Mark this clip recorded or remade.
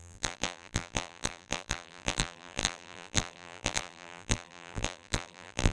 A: remade